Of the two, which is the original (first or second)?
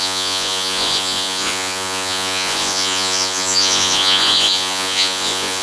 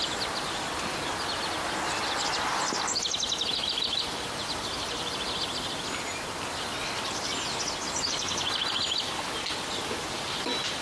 second